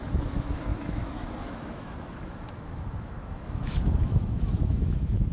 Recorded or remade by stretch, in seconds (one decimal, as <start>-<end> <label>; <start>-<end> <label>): 0.0-5.3 remade